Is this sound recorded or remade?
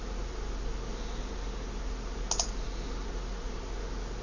recorded